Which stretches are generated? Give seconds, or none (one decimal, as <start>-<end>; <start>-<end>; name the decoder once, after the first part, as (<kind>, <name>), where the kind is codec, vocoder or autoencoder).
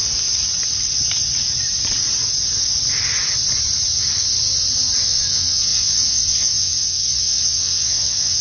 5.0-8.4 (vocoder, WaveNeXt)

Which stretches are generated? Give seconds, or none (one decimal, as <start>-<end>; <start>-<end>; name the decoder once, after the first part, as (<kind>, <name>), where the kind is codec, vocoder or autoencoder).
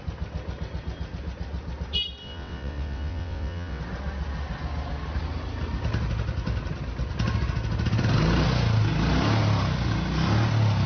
2.2-3.8 (vocoder, WaveNeXt)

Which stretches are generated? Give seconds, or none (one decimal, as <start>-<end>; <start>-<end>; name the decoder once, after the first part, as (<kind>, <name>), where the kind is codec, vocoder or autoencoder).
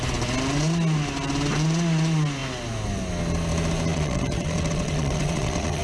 3.9-5.8 (vocoder, WaveNeXt)